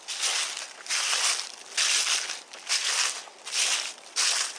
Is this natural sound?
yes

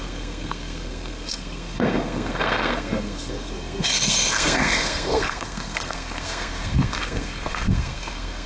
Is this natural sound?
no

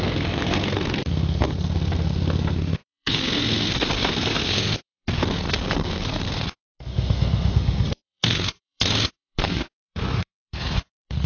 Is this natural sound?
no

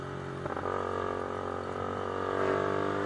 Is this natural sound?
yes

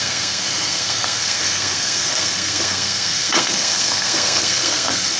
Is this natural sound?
no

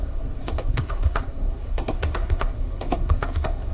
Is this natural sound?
no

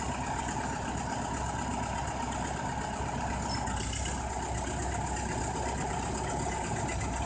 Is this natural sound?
yes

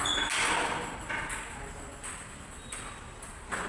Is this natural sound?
yes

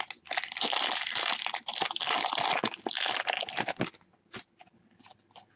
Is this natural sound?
yes